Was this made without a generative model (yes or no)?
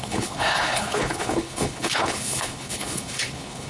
no